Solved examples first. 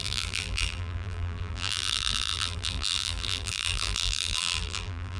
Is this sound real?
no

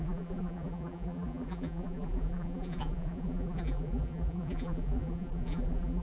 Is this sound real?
no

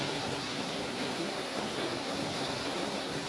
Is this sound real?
no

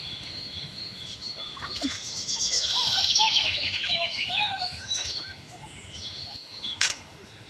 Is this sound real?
no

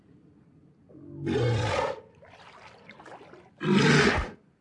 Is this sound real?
yes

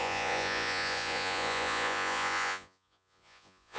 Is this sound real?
no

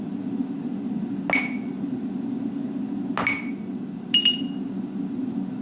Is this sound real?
yes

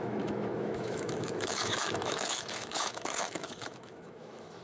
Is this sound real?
no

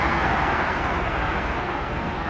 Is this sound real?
no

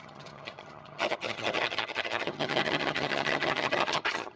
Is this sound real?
no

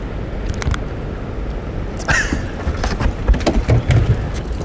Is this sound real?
yes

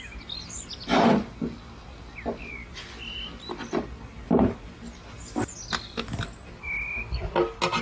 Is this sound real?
yes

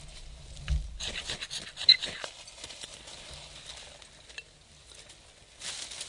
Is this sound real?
yes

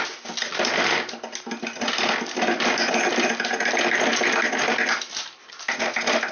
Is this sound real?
yes